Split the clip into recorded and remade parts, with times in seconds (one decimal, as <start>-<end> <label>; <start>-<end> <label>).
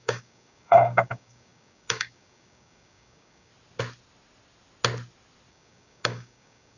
0.0-3.5 remade; 3.5-5.5 recorded; 5.5-6.8 remade